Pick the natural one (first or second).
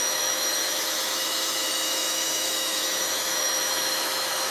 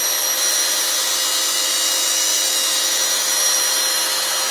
second